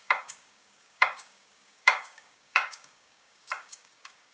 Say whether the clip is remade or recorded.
remade